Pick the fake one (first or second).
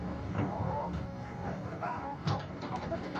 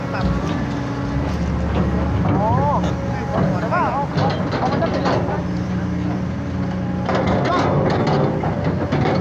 first